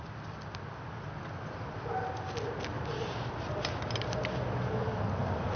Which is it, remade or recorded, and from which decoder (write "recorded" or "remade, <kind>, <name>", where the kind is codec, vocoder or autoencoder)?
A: recorded